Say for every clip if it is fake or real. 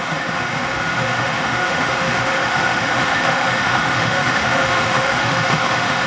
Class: fake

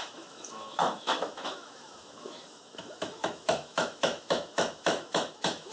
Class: fake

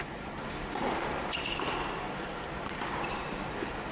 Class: real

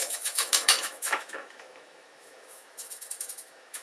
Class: fake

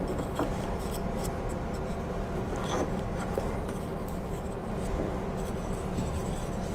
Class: real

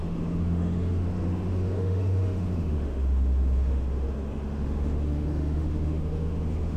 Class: fake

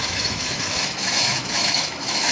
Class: fake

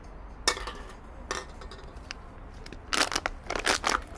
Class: real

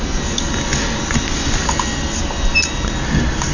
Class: real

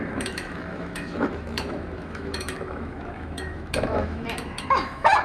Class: fake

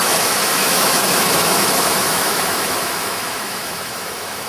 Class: fake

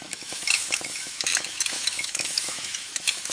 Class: fake